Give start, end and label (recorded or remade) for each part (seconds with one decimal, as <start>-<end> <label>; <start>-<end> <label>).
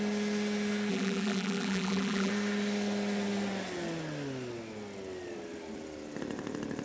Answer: 0.0-0.9 recorded; 0.9-2.3 remade; 2.3-6.8 recorded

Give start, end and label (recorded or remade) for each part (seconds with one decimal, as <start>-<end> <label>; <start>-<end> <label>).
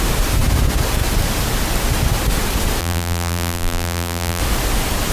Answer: 0.0-2.8 recorded; 2.8-4.4 remade; 4.4-5.1 recorded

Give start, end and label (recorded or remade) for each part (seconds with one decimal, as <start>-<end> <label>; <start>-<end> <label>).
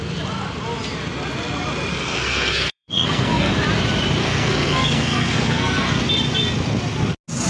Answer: 0.0-1.9 recorded; 1.9-3.5 remade; 3.5-4.2 recorded; 4.2-6.0 remade; 6.0-7.5 recorded